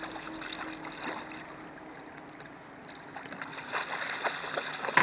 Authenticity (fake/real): real